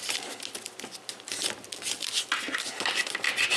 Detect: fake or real real